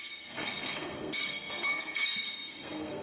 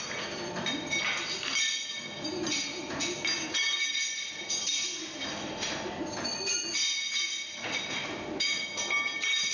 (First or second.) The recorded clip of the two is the second